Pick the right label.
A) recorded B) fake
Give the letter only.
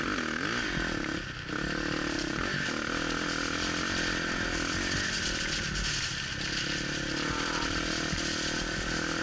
A